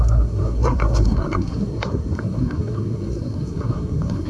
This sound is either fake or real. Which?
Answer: fake